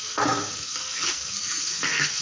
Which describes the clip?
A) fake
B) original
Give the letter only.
A